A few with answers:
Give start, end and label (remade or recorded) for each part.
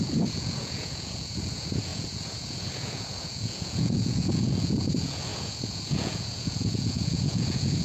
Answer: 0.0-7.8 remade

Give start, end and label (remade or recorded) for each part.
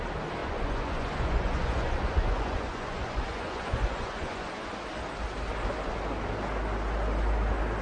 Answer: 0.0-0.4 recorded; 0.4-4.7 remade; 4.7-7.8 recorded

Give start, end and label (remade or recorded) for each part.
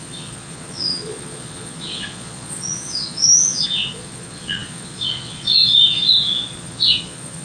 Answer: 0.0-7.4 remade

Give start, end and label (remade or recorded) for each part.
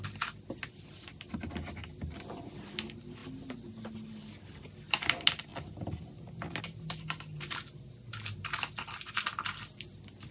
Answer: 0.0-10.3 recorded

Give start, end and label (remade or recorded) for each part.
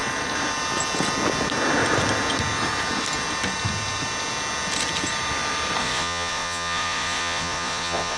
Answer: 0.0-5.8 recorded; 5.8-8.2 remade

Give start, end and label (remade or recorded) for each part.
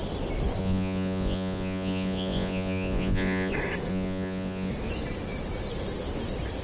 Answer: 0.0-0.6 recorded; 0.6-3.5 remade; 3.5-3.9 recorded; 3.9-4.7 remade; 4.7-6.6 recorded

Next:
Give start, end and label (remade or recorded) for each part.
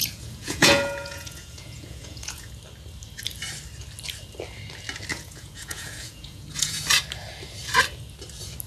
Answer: 0.0-2.5 remade; 2.5-5.1 recorded; 5.1-6.8 remade; 6.8-8.7 recorded